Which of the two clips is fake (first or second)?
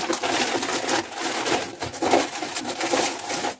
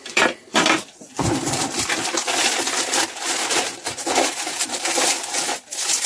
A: second